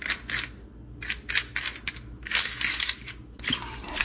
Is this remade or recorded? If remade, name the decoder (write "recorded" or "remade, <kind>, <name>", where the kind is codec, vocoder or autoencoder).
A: recorded